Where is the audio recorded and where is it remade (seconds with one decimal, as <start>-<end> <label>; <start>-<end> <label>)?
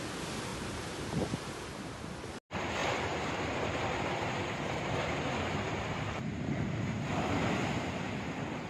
0.0-0.5 recorded; 0.5-1.9 remade; 1.9-2.8 recorded; 2.8-7.2 remade; 7.2-8.7 recorded